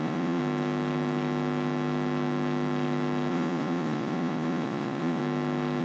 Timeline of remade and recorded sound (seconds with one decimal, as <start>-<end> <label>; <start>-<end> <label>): 0.0-0.4 remade; 0.4-3.3 recorded; 3.3-5.2 remade; 5.2-5.8 recorded